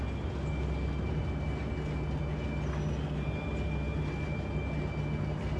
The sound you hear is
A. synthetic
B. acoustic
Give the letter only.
B